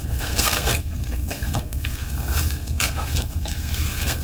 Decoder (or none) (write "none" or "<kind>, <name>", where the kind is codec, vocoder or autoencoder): codec, SNAC